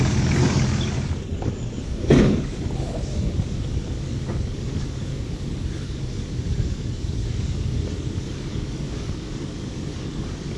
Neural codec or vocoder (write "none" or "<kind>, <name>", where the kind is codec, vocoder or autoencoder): codec, DAC